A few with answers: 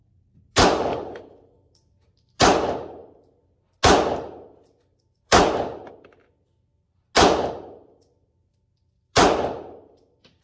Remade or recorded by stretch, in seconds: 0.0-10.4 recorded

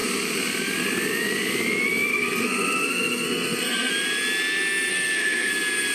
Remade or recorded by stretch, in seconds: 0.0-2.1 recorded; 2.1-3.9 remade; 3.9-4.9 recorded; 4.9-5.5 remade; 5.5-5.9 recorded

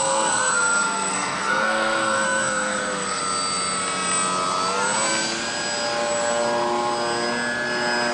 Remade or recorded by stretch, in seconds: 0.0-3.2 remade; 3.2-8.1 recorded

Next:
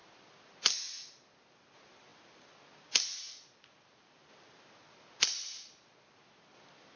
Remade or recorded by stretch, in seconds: 0.0-7.0 recorded

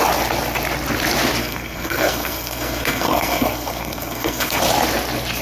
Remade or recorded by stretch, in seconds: 0.0-1.4 recorded; 1.4-4.6 remade; 4.6-5.4 recorded

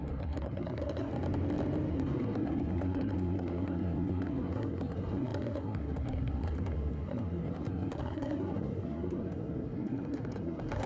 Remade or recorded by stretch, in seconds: 0.0-1.1 remade; 1.1-1.9 recorded; 1.9-10.9 remade

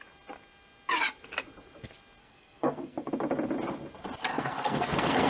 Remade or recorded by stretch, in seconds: 0.0-2.2 recorded; 2.2-3.1 remade; 3.1-4.3 recorded; 4.3-5.3 remade

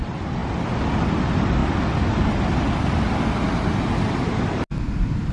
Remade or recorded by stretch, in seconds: 0.0-5.3 recorded